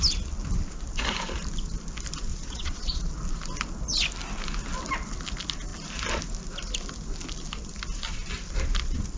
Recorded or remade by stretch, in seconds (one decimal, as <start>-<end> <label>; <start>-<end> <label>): 0.0-2.3 recorded; 2.3-3.1 remade; 3.1-9.2 recorded